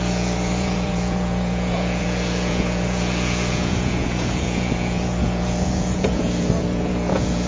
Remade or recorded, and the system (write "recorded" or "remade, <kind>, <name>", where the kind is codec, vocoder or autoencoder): remade, vocoder, Vocos